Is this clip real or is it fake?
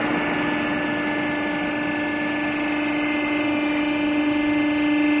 real